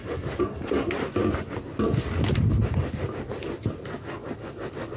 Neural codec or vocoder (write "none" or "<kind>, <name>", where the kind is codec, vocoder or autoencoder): none